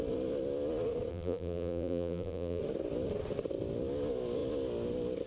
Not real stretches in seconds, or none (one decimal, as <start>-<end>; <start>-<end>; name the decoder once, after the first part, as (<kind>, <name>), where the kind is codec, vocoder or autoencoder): 1.1-2.6 (vocoder, BigVGAN v2)